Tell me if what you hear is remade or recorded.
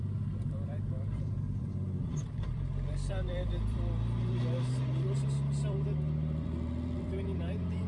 remade